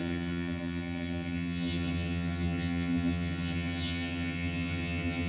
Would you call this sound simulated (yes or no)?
yes